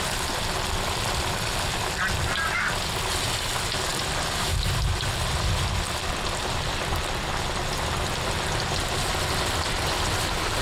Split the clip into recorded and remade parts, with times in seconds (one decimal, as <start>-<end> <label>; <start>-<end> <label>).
0.0-10.6 recorded